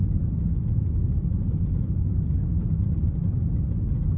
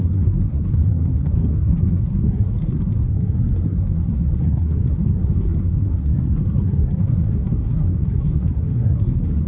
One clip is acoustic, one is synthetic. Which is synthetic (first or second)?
second